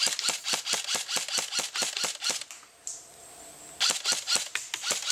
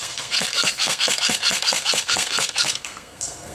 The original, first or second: first